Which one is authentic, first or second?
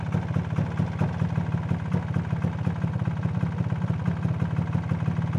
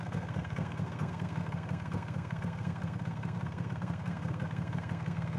first